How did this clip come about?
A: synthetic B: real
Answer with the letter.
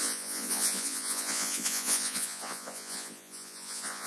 A